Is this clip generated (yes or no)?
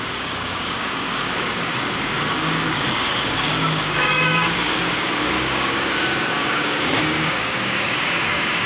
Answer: yes